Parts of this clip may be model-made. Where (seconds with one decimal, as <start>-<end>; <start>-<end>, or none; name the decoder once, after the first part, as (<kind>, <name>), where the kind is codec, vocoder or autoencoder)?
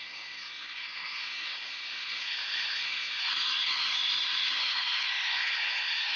0.0-6.2 (codec, SNAC)